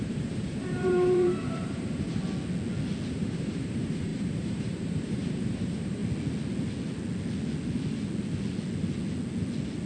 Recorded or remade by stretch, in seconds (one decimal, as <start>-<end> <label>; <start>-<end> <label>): 0.0-2.2 remade; 2.2-3.1 recorded; 3.1-6.0 remade; 6.0-9.9 recorded